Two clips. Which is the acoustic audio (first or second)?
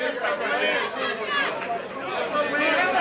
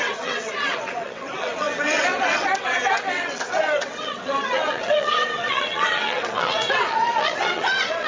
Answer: first